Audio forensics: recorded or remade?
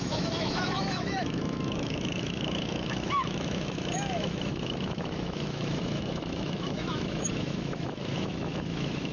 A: remade